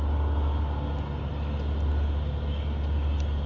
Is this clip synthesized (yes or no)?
no